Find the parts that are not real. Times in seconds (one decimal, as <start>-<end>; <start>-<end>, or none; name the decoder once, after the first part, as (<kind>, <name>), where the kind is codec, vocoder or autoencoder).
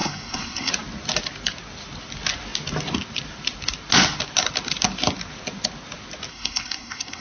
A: 0.0-0.7 (codec, SNAC); 6.3-7.2